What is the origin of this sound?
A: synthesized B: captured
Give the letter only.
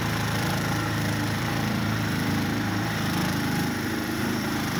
A